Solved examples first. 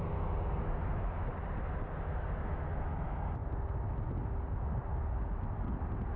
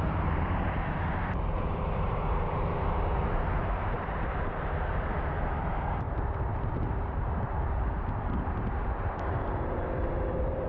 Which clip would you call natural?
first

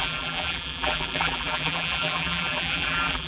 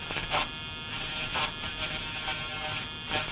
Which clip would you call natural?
second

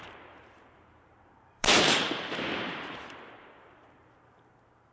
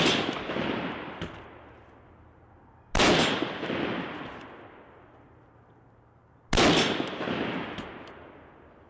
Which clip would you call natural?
second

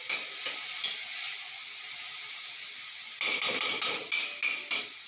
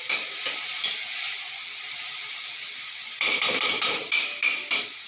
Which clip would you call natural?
first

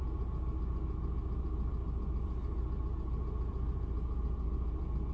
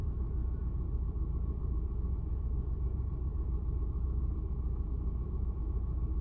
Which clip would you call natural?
first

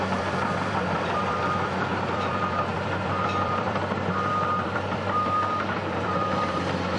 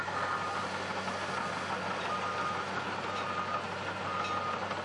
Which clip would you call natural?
second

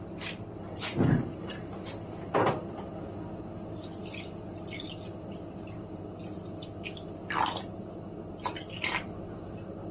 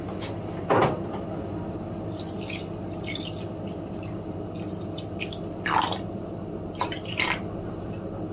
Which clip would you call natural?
first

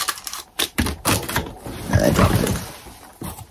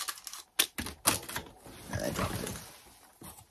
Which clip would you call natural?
second